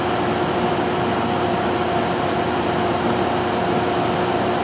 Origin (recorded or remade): recorded